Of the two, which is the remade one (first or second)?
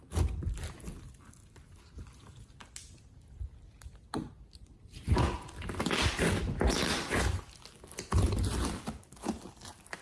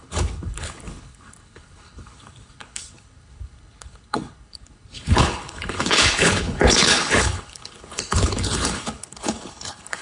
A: second